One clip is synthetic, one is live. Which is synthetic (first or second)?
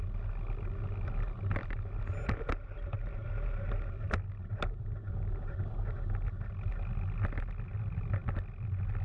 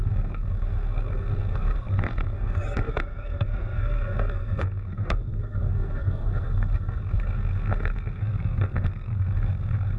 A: second